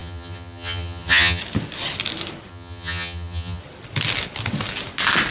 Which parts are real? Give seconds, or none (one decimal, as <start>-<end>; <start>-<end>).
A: 1.4-2.5; 3.6-5.3